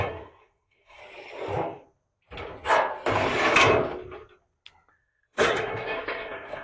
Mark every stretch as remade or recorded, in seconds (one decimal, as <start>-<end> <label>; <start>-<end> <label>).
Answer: 0.0-1.0 remade; 1.0-5.0 recorded; 5.0-6.6 remade